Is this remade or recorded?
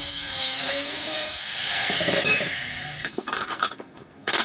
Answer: remade